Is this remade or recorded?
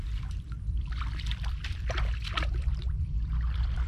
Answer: remade